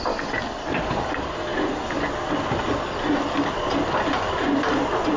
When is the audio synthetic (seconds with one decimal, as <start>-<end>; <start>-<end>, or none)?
none